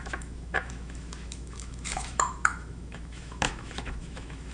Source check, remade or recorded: remade